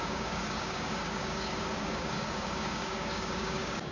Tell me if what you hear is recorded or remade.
remade